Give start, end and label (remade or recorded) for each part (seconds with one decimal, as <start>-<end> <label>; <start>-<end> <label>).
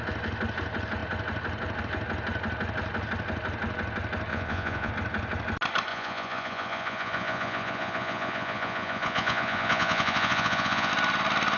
0.0-4.3 recorded; 4.3-4.9 remade; 4.9-5.9 recorded; 5.9-10.9 remade; 10.9-11.6 recorded